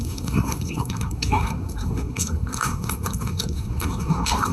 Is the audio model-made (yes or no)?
yes